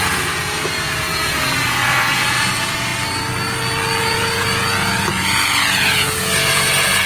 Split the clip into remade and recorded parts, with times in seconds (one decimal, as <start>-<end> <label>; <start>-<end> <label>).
0.0-2.9 remade; 2.9-4.0 recorded; 4.0-7.1 remade